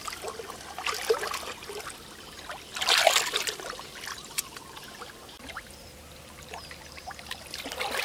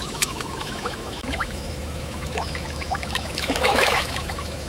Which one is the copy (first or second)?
second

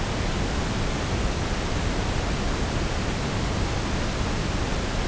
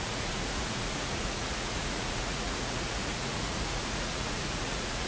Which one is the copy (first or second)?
second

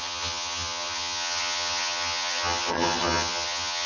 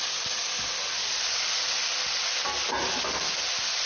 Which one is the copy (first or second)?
first